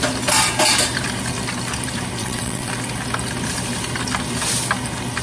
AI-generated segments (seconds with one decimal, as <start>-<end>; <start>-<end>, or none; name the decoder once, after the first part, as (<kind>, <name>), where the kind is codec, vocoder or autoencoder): 2.2-2.7 (vocoder, WaveNeXt)